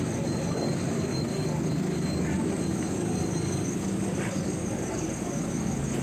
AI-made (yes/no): yes